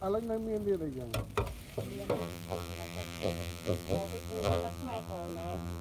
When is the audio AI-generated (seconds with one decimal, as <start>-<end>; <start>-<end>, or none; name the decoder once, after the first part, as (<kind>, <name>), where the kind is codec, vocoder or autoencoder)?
2.2-5.8 (vocoder, BigVGAN v2)